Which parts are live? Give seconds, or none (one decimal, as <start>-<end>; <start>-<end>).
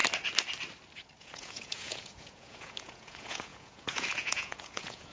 0.0-1.2